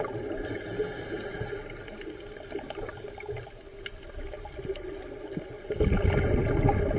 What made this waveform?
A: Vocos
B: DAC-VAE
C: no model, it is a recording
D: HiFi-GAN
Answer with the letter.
C